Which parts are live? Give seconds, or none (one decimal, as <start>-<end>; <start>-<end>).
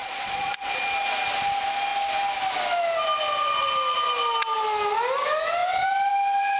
0.8-6.6